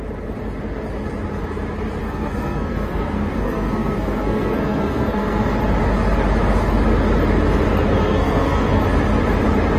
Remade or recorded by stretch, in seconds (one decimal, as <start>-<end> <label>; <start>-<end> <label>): 0.0-2.0 recorded; 2.0-5.6 remade; 5.6-8.0 recorded; 8.0-8.8 remade; 8.8-9.8 recorded